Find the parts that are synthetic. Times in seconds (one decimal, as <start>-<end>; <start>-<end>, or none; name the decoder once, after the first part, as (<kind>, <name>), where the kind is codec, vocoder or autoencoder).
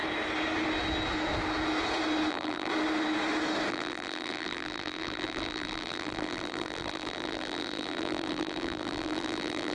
2.3-2.7 (vocoder, BigVGAN v2); 3.7-9.7